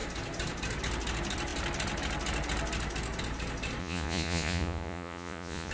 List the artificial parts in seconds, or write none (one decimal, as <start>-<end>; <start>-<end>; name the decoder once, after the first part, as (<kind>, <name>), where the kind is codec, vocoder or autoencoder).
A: 3.8-5.7 (vocoder, Vocos)